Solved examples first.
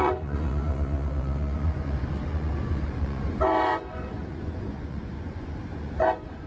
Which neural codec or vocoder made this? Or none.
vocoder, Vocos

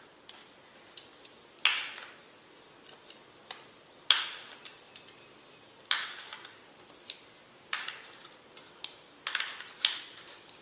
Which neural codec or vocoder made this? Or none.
none